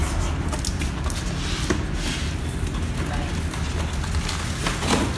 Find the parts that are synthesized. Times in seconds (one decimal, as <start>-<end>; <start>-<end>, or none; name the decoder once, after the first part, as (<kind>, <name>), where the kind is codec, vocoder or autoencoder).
none

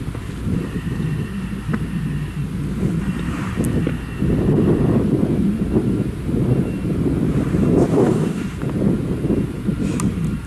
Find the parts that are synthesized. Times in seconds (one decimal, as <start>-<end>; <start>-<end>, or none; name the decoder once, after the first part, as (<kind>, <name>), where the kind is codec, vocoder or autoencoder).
7.9-8.4 (codec, DAC)

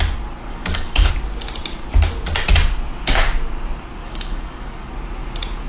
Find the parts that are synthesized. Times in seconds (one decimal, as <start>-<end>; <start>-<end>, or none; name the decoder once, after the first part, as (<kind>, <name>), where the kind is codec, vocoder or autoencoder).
0.5-1.1 (codec, DAC); 4.0-4.9